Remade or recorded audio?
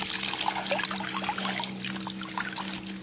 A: recorded